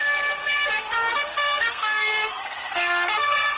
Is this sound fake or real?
fake